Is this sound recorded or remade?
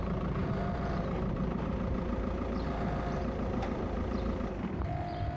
remade